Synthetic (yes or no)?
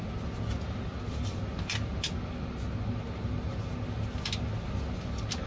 no